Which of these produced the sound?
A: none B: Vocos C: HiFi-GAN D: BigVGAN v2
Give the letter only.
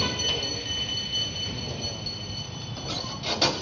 A